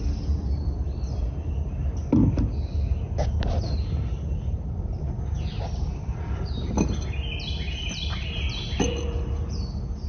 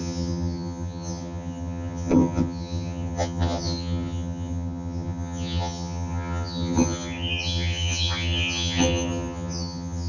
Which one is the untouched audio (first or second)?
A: first